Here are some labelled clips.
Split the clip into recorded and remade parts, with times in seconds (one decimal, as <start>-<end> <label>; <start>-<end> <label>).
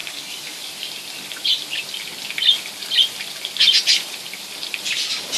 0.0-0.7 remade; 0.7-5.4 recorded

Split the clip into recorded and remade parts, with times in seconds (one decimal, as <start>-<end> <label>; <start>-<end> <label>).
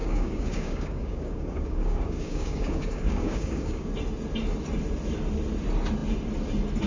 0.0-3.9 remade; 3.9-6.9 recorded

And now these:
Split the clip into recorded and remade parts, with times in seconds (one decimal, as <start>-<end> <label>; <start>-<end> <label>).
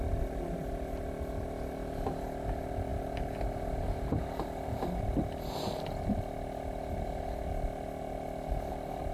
0.0-9.1 recorded